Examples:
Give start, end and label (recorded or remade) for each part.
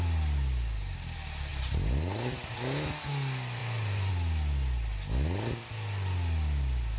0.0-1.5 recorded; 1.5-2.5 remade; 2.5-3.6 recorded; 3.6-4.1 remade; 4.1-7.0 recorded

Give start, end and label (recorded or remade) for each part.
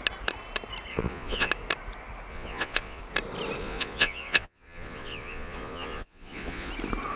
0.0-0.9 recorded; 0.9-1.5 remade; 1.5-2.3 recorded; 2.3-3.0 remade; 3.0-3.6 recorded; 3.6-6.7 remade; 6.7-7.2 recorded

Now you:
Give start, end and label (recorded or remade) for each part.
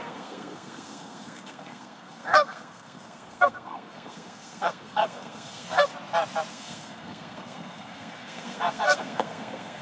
0.0-5.9 remade; 5.9-6.5 recorded; 6.5-9.8 remade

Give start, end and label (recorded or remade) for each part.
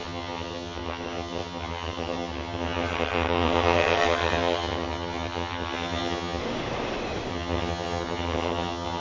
0.0-6.4 remade; 6.4-7.3 recorded; 7.3-9.0 remade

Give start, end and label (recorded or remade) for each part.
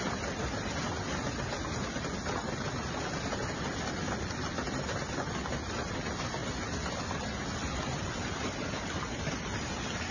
0.0-10.1 recorded